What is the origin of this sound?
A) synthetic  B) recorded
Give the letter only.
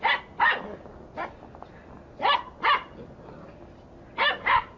B